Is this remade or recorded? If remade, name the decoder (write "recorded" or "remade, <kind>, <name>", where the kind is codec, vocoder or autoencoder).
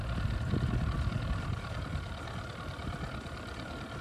recorded